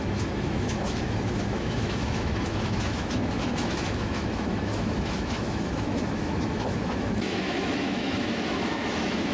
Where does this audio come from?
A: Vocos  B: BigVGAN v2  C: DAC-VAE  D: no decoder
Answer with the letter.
C